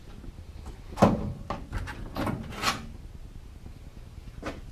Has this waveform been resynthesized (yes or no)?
no